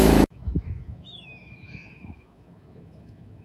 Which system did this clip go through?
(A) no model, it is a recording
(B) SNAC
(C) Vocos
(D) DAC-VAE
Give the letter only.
D